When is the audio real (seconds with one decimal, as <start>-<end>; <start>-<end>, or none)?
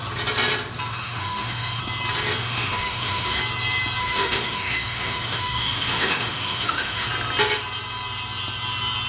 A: 0.0-0.9; 1.8-2.4; 3.4-4.0; 7.1-9.1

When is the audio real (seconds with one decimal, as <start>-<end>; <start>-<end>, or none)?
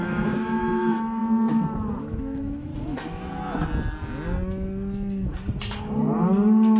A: 1.2-2.0; 2.7-6.8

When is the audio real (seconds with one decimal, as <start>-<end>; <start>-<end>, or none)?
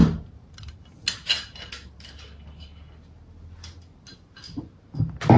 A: 0.0-5.4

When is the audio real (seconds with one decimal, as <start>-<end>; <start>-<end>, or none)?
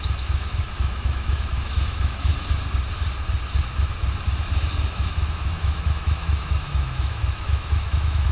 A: 2.3-4.8